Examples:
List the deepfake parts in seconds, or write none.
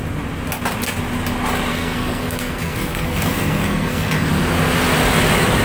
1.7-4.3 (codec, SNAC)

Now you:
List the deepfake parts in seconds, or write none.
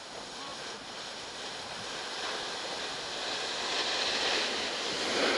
none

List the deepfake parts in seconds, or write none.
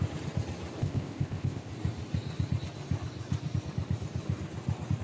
0.8-1.7 (codec, ZipCodec)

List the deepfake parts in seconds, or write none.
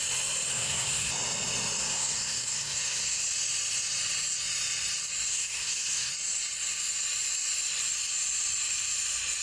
0.5-1.1 (codec, SNAC); 1.8-3.2; 5.3-6.1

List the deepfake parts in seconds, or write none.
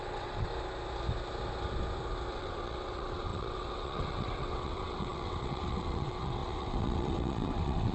0.0-0.5 (vocoder, WaveNeXt); 2.3-7.9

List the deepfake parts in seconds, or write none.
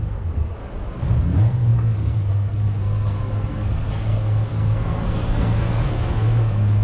0.0-0.6 (codec, SNAC); 1.2-6.8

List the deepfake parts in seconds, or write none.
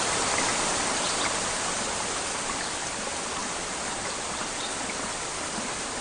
none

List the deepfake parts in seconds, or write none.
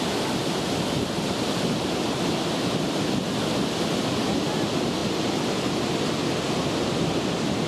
none